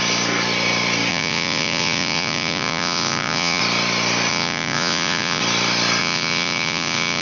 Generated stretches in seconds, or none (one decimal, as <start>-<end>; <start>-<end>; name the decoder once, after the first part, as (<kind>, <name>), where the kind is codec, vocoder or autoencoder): 1.1-3.6 (vocoder, Vocos); 4.3-5.4; 6.0-7.2